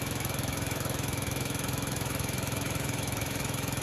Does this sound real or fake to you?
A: fake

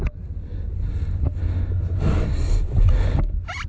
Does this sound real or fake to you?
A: real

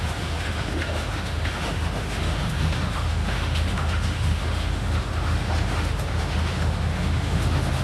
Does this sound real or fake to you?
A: fake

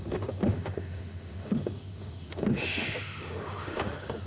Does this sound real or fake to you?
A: fake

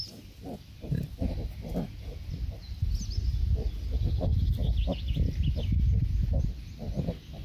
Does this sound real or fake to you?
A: real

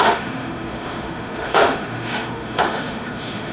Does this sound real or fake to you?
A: fake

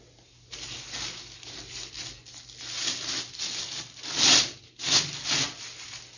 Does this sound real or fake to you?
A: real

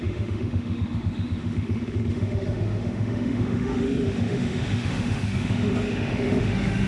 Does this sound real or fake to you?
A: fake